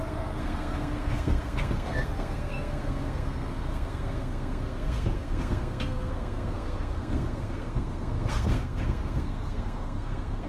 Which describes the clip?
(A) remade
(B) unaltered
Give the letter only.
A